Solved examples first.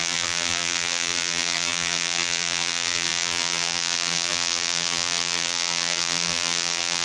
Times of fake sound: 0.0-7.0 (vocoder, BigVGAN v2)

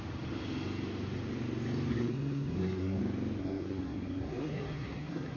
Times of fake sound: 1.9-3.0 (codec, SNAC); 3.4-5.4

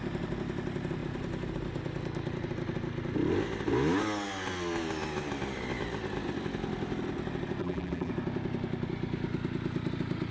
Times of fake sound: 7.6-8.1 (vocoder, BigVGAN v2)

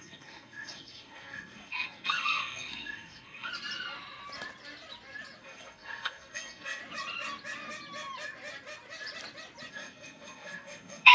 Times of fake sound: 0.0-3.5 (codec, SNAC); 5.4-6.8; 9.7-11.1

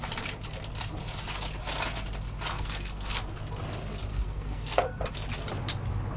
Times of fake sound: 2.5-3.2 (codec, SNAC); 4.1-5.1

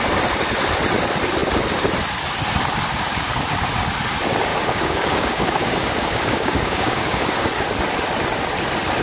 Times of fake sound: 4.5-7.5 (codec, DAC)